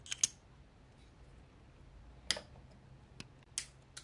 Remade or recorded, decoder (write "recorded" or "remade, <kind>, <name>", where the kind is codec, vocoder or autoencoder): recorded